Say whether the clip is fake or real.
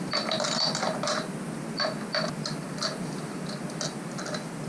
real